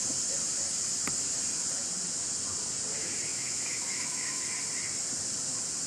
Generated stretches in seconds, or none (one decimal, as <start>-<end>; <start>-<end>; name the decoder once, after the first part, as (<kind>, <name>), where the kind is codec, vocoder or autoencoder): 3.3-4.4 (autoencoder, DAC-VAE)